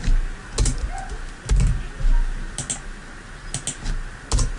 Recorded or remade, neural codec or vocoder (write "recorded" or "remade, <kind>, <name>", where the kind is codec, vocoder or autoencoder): recorded